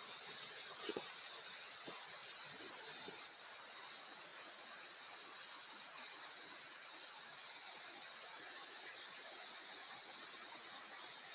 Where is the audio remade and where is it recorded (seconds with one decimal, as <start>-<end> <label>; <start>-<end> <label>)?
0.0-2.2 remade; 2.2-3.8 recorded; 3.8-11.3 remade